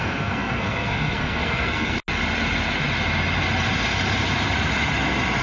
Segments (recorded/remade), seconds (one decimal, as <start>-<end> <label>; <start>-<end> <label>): 0.0-2.0 remade; 2.0-5.4 recorded